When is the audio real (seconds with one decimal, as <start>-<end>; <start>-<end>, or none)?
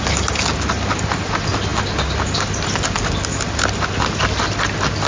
0.0-5.1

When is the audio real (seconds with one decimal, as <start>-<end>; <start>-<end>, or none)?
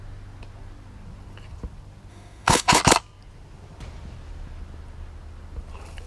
0.0-2.1; 2.8-6.1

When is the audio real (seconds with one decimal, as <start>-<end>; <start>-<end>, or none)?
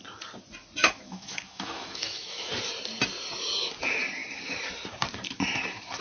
0.0-0.8; 2.5-6.0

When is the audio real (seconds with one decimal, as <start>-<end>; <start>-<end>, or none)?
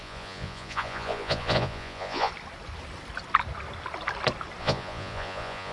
2.3-4.6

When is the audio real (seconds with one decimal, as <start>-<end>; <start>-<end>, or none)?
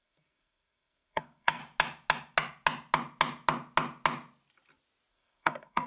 1.6-5.1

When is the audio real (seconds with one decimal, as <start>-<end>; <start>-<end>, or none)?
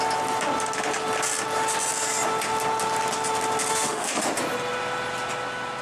0.0-3.7; 4.2-5.8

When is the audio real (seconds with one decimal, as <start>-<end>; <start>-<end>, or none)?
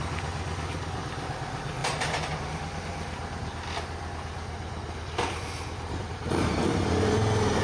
0.0-7.6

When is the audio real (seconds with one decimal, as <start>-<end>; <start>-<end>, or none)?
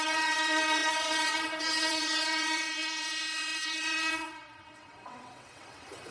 none